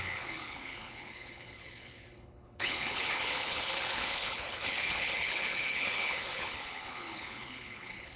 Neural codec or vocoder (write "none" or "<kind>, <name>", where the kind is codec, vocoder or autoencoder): codec, HILCodec